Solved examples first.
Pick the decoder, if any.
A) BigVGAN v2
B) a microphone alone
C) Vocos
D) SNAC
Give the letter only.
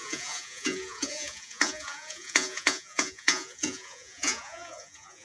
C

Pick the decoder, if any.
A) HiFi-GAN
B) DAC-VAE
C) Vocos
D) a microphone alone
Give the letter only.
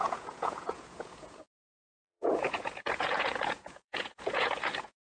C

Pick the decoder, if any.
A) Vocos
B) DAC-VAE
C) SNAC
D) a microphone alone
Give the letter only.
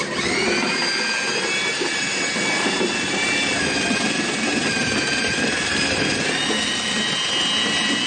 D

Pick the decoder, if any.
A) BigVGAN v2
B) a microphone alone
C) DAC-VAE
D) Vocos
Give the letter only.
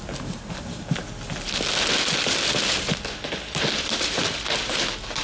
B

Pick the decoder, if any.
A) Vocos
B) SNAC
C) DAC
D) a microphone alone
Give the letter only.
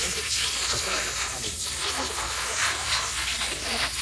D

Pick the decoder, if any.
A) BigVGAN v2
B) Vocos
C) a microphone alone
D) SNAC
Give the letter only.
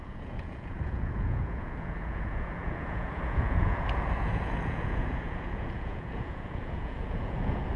B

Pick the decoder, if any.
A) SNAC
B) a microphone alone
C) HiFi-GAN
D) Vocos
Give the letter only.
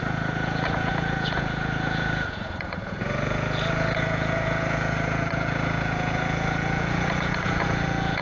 D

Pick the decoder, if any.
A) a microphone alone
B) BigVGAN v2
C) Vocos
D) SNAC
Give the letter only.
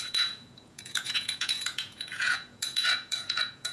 C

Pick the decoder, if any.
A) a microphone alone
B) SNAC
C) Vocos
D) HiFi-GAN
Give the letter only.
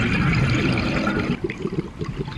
A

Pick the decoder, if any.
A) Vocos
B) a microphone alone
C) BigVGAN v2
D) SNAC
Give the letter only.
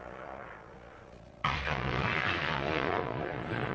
A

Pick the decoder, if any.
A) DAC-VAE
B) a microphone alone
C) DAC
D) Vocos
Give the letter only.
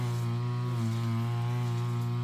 B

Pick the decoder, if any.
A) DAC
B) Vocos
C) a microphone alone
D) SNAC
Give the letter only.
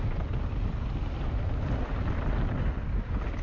C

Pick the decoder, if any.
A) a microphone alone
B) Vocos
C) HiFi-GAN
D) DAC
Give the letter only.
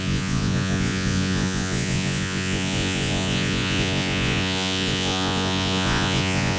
B